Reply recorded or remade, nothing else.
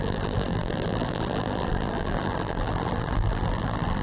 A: remade